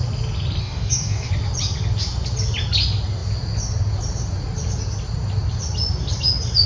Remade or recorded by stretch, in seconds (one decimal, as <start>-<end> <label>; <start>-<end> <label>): 0.0-0.6 recorded; 0.6-1.3 remade; 1.3-6.7 recorded